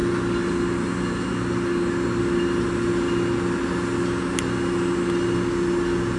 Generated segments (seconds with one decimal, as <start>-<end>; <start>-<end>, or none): none